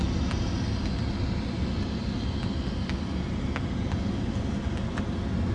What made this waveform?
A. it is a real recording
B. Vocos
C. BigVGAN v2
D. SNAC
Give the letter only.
A